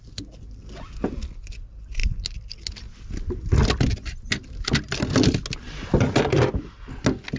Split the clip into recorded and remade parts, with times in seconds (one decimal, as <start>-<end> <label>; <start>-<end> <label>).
0.0-7.4 recorded